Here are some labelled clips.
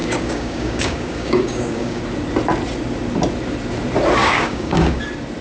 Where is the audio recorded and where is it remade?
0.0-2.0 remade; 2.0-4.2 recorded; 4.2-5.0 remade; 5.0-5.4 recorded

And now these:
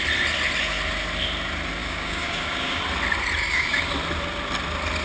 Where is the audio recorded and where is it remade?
0.0-1.8 recorded; 1.8-2.8 remade; 2.8-3.4 recorded; 3.4-3.9 remade; 3.9-5.0 recorded